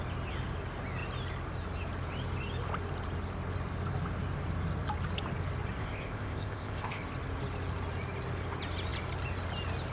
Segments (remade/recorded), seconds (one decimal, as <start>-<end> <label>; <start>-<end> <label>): 0.0-5.8 recorded; 5.8-7.0 remade; 7.0-9.9 recorded